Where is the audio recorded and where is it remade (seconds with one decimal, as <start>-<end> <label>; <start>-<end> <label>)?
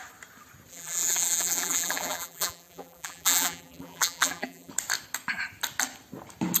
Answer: 0.0-0.7 recorded; 0.7-4.7 remade; 4.7-6.6 recorded